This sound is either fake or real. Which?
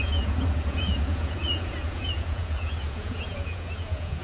fake